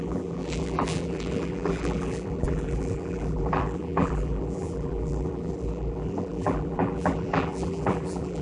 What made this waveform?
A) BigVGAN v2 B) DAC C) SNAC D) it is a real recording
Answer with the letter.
A